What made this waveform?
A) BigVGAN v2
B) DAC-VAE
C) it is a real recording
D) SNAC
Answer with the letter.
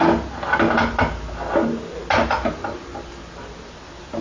C